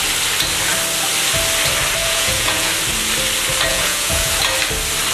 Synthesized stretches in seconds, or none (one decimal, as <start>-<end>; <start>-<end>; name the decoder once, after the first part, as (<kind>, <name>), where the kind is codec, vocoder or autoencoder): 2.0-2.7 (vocoder, Vocos); 3.7-4.3